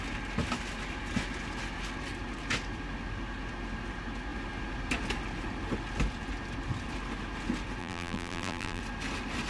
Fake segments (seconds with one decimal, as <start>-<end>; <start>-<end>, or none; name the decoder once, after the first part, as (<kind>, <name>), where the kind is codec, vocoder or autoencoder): 7.8-8.8 (vocoder, BigVGAN v2)